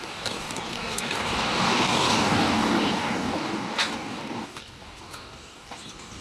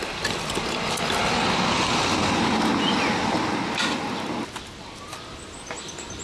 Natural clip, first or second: second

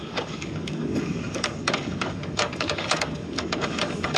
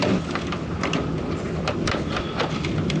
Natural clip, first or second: second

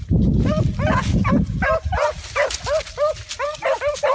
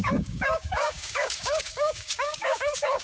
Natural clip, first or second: first